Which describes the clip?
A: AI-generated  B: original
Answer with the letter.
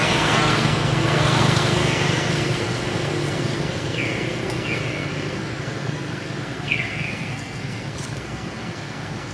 A